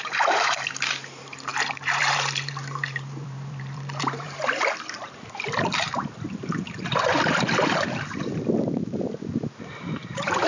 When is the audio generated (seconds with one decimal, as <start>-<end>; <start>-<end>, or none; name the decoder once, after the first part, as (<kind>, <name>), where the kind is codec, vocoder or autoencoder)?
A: 0.0-4.4 (vocoder, BigVGAN v2); 9.3-10.5